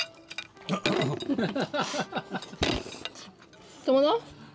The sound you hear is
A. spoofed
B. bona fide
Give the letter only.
B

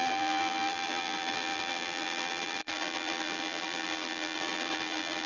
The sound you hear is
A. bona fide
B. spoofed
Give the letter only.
B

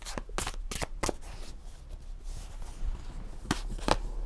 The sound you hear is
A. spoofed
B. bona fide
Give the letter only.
B